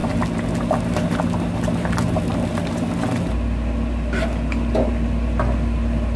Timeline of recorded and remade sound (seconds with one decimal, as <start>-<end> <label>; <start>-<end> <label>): 0.0-6.2 recorded